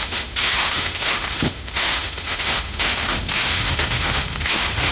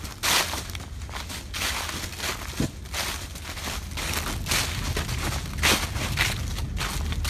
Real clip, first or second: second